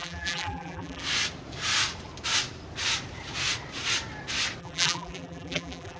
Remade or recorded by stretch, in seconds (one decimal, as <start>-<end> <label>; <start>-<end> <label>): 0.0-1.0 remade; 1.0-4.6 recorded; 4.6-6.0 remade